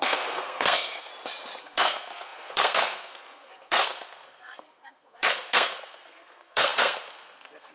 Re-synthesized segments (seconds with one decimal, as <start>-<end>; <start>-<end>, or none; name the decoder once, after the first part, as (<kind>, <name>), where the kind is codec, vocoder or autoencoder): 0.0-1.1 (codec, SNAC); 1.6-7.7

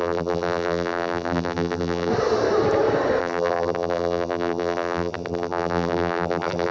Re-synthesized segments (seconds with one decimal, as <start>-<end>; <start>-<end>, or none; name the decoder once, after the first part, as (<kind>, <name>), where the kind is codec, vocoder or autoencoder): 0.0-2.1 (vocoder, BigVGAN v2); 3.2-6.7

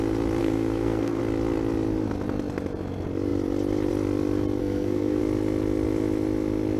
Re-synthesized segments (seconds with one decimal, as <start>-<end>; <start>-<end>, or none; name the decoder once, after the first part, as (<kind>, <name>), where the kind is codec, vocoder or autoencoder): 0.4-1.2 (codec, SNAC); 4.6-5.2

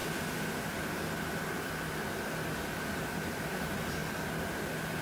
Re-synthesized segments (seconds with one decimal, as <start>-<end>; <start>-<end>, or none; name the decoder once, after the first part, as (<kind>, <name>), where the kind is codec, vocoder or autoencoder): 3.0-4.0 (vocoder, BigVGAN v2)

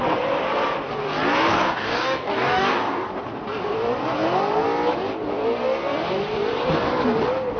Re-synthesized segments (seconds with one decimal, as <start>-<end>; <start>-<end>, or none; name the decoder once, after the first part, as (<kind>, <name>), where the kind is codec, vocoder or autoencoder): 1.5-3.1 (codec, DAC)

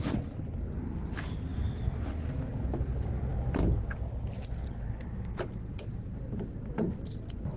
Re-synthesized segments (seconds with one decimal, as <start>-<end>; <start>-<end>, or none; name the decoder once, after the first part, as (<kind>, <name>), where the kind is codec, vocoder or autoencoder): none